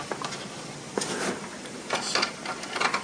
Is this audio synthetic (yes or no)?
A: no